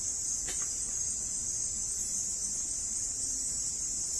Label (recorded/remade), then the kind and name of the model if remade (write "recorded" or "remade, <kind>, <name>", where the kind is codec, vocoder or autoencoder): recorded